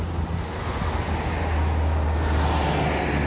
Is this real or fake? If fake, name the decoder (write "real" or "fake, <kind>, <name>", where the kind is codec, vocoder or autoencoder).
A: real